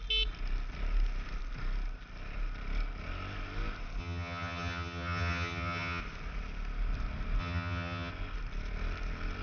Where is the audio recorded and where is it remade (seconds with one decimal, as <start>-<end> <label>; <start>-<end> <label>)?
0.0-4.0 recorded; 4.0-6.0 remade; 6.0-7.4 recorded; 7.4-8.1 remade; 8.1-9.4 recorded